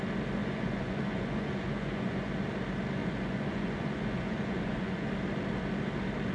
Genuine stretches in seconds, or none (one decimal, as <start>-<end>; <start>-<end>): 0.0-0.4; 2.3-3.0; 5.1-6.3

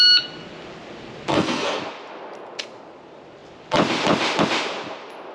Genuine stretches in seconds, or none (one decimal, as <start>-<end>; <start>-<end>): 0.0-1.3; 1.8-5.3

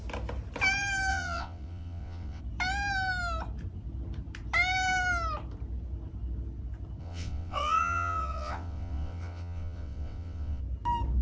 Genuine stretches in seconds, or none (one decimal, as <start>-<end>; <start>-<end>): 0.0-1.1; 2.4-7.0; 10.6-11.2

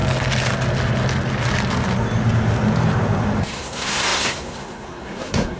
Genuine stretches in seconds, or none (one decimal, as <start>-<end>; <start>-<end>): 0.0-3.4

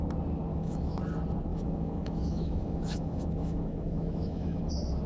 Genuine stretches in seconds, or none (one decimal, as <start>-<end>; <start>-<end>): 0.0-0.5; 1.0-1.5; 4.6-5.1

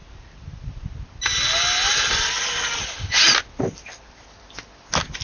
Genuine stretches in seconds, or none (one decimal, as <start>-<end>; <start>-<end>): 0.0-5.2